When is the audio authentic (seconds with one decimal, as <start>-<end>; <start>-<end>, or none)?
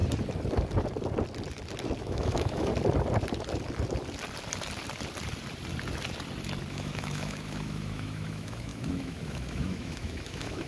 0.0-2.0; 2.7-6.7